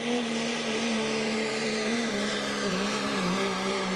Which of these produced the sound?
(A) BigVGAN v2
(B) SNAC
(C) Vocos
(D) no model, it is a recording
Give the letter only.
A